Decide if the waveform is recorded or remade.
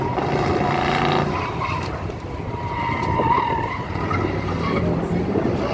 recorded